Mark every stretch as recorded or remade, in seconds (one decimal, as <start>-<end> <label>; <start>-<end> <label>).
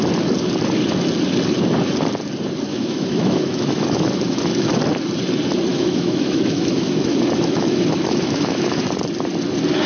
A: 0.0-2.7 recorded; 2.7-4.8 remade; 4.8-5.7 recorded; 5.7-8.8 remade; 8.8-9.9 recorded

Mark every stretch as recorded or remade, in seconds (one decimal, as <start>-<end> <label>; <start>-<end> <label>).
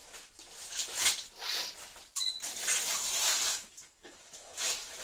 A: 0.0-1.0 remade; 1.0-3.5 recorded; 3.5-5.0 remade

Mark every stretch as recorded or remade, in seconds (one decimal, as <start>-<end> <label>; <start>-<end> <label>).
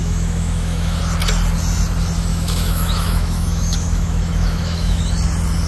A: 0.0-1.0 remade; 1.0-2.3 recorded; 2.3-5.0 remade; 5.0-5.7 recorded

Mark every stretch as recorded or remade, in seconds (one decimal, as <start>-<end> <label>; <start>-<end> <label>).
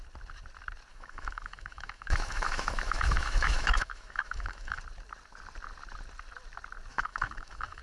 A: 0.0-0.9 recorded; 0.9-4.8 remade; 4.8-6.9 recorded; 6.9-7.8 remade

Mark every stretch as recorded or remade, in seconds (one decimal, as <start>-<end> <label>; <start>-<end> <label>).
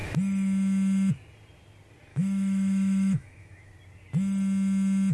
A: 0.0-2.1 recorded; 2.1-3.7 remade; 3.7-5.1 recorded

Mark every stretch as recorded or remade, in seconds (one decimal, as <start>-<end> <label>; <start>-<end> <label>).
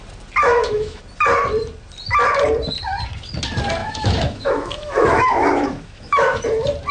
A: 0.0-0.4 recorded; 0.4-1.0 remade; 1.0-3.8 recorded; 3.8-6.4 remade; 6.4-6.9 recorded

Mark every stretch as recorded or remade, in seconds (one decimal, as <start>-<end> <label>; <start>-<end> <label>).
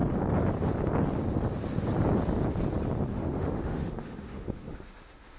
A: 0.0-3.1 recorded; 3.1-5.4 remade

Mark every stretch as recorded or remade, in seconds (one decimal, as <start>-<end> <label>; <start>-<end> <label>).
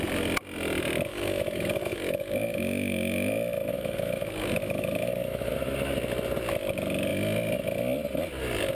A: 0.0-1.1 recorded; 1.1-5.5 remade; 5.5-8.7 recorded